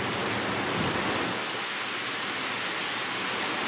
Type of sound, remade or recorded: recorded